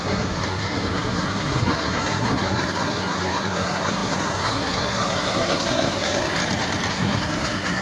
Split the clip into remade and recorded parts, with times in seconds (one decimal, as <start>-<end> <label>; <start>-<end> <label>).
0.0-6.4 remade; 6.4-6.9 recorded; 6.9-7.8 remade